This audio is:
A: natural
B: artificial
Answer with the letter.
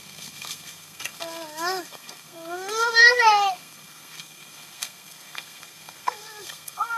B